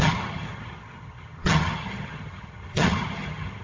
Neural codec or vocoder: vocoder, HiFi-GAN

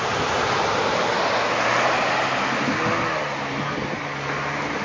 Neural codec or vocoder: none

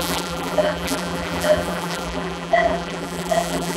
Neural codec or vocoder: vocoder, BigVGAN v2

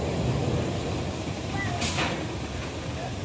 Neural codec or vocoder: none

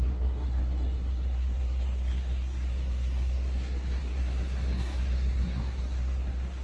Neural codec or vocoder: codec, SNAC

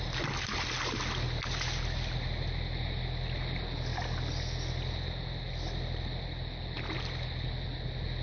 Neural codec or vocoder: none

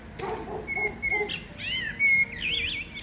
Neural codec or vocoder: none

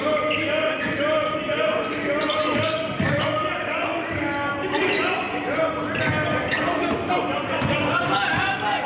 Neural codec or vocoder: none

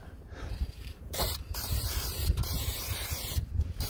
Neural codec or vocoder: vocoder, BigVGAN v2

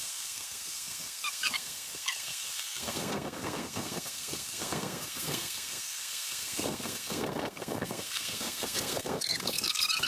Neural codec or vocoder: codec, SNAC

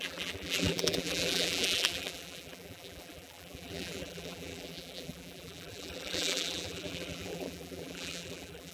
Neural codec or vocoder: vocoder, BigVGAN v2